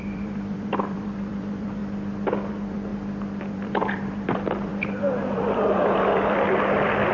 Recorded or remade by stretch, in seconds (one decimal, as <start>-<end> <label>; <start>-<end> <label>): 0.0-1.8 remade; 1.8-2.5 recorded; 2.5-2.9 remade; 2.9-3.4 recorded; 3.4-7.1 remade